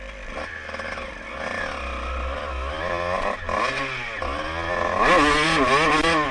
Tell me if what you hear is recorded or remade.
recorded